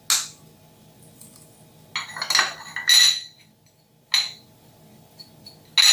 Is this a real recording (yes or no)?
yes